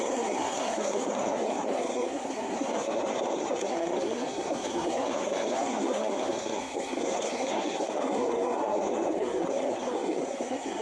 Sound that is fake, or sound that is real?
fake